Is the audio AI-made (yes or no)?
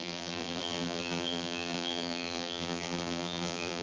yes